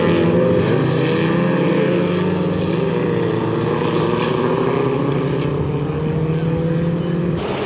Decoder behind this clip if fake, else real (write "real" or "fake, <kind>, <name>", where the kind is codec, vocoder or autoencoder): real